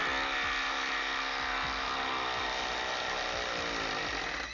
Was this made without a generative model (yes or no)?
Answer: yes